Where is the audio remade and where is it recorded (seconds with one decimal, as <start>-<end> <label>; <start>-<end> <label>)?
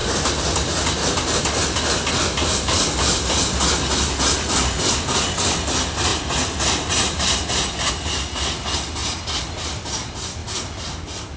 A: 0.0-1.4 remade; 1.4-6.1 recorded; 6.1-7.9 remade; 7.9-10.4 recorded; 10.4-11.4 remade